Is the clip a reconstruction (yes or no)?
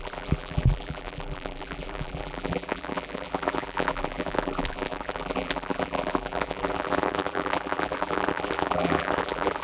yes